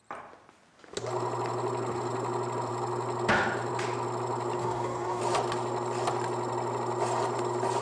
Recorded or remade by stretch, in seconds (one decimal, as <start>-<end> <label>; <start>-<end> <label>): 0.0-4.6 recorded; 4.6-5.2 remade; 5.2-7.8 recorded